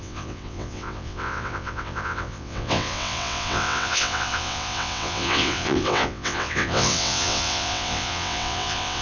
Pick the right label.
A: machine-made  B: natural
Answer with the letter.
A